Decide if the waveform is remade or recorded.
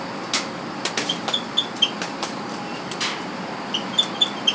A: recorded